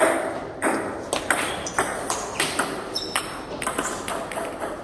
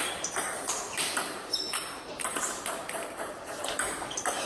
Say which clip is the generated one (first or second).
second